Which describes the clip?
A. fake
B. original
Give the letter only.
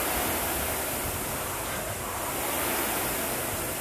B